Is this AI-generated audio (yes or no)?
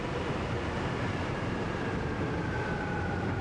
yes